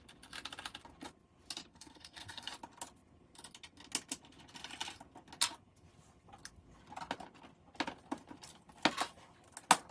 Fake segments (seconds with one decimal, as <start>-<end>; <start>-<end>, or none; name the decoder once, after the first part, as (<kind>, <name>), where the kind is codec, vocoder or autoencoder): 1.7-2.5 (codec, SNAC)